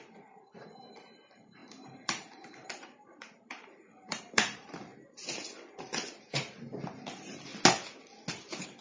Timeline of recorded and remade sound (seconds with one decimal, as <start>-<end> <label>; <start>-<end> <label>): 0.0-4.9 remade; 4.9-6.1 recorded; 6.1-7.5 remade; 7.5-8.4 recorded; 8.4-8.8 remade